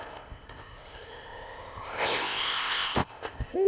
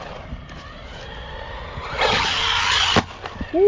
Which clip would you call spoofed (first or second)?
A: first